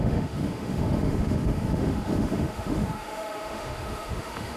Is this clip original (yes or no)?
no